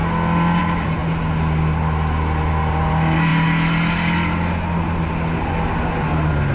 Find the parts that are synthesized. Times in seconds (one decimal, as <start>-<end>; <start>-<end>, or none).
none